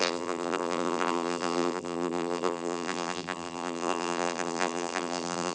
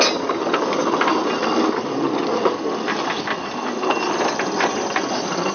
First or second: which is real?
second